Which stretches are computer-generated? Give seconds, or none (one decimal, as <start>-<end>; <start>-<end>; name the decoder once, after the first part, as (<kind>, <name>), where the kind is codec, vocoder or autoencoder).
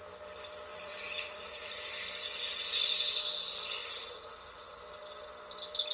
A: 0.7-1.9 (vocoder, Vocos); 3.8-4.8